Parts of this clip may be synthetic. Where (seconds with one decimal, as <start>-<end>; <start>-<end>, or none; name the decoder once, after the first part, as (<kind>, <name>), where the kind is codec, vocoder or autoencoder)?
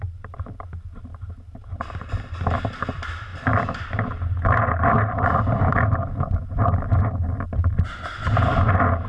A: 0.0-3.3 (vocoder, BigVGAN v2); 7.4-9.1